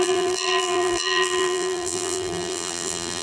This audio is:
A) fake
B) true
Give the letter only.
A